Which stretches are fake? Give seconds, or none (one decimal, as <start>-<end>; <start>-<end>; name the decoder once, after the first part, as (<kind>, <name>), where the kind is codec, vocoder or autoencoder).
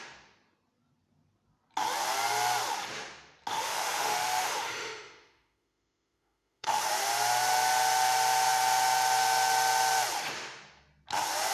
3.5-6.9 (autoencoder, DAC-VAE)